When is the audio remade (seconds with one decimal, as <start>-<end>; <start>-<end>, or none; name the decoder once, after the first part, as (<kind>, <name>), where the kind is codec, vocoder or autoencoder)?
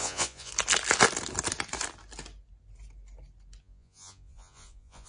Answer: 0.0-0.5 (vocoder, Vocos); 3.6-5.1